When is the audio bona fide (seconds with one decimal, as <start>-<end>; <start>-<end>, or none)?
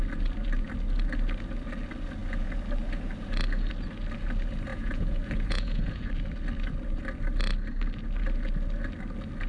0.0-4.7; 6.1-9.5